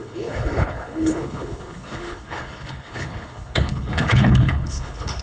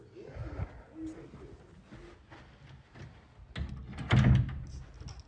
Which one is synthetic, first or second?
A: first